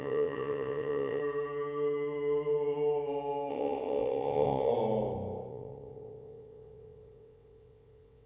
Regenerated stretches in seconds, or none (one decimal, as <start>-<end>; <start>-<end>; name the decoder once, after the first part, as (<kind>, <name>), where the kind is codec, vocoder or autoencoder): 0.0-1.2 (vocoder, WaveNeXt); 3.5-4.7; 5.5-8.3